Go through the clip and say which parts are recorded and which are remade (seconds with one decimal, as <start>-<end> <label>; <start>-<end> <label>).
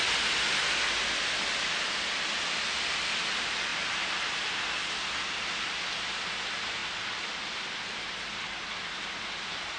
0.0-3.7 recorded; 3.7-6.1 remade; 6.1-6.8 recorded; 6.8-7.6 remade; 7.6-9.8 recorded